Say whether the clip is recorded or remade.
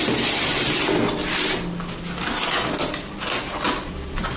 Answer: recorded